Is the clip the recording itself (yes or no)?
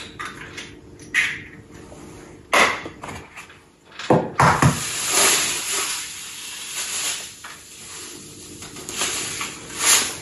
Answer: yes